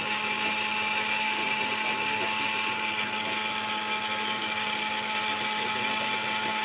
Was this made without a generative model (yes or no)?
yes